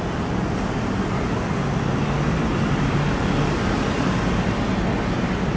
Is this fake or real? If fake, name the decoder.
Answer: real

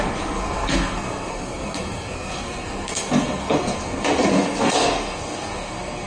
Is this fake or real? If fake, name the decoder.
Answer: fake, codec, SNAC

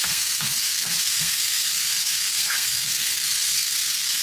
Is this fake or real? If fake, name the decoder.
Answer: fake, codec, SNAC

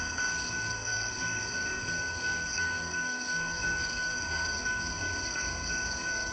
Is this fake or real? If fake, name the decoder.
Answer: fake, codec, SNAC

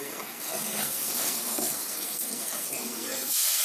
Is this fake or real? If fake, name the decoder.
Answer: fake, codec, SNAC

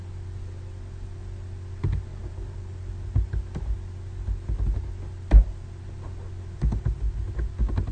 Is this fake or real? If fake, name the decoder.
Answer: real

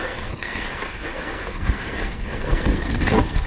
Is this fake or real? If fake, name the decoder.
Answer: fake, codec, SNAC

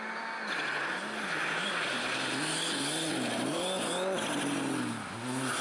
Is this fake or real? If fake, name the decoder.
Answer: real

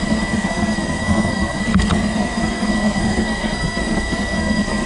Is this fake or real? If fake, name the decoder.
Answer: fake, codec, SNAC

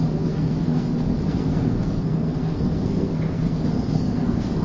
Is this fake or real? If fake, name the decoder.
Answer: fake, codec, SNAC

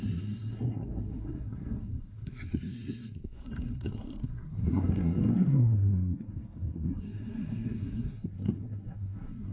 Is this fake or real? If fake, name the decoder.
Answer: fake, codec, SNAC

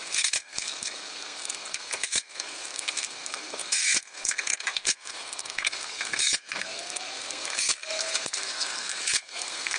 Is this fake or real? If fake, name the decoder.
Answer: fake, codec, SNAC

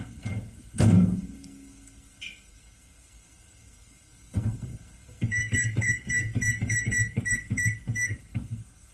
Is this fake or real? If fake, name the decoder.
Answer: fake, codec, SNAC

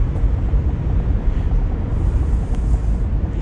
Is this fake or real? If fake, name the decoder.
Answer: real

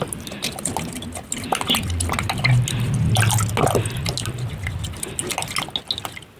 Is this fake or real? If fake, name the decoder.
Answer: real